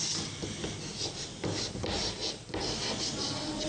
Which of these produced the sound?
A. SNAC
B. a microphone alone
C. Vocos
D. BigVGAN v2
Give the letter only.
B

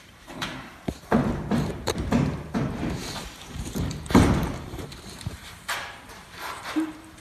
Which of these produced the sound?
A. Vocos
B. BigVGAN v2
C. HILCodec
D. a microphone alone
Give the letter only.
B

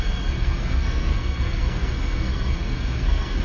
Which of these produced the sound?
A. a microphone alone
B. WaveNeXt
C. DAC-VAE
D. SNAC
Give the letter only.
D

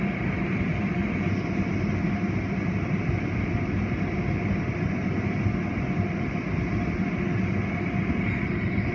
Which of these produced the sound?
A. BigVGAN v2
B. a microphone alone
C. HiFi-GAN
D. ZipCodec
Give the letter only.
B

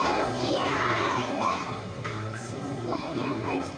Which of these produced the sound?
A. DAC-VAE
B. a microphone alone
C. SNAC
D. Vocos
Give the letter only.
C